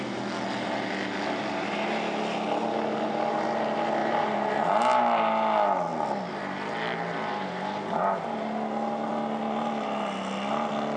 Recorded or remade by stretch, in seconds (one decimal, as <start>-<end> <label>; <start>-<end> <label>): 0.0-4.0 recorded; 4.0-4.7 remade; 4.7-11.0 recorded